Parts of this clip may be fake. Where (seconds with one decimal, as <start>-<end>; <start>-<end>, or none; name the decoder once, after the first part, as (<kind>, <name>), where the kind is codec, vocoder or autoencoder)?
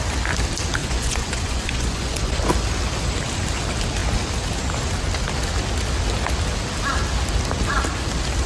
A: 0.8-2.3 (vocoder, Vocos)